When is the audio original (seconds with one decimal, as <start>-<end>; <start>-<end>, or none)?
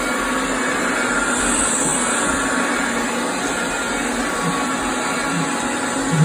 0.0-6.2